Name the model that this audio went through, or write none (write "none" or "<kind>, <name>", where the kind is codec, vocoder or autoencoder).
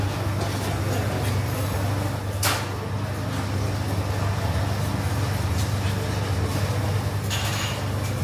none